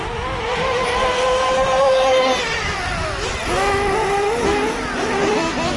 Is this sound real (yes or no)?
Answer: yes